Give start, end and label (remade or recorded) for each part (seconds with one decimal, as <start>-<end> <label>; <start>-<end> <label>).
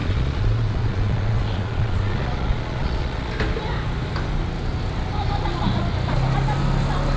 0.0-3.3 remade; 3.3-7.2 recorded